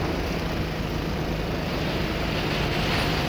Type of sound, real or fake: real